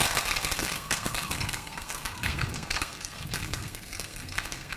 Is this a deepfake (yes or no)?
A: yes